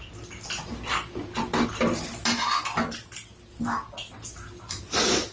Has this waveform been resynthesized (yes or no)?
no